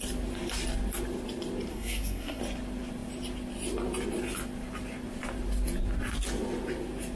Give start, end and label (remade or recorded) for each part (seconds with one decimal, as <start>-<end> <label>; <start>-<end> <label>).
0.0-1.7 recorded; 1.7-2.4 remade; 2.4-7.2 recorded